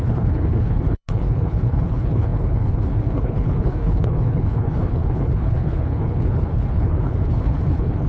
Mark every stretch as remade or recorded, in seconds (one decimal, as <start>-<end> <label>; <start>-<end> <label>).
0.0-8.1 remade